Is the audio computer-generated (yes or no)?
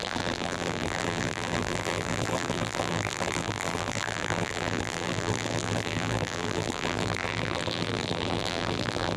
yes